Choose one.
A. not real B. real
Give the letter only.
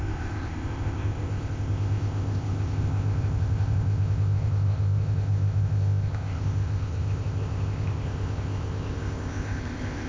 A